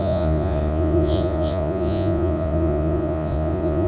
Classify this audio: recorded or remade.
remade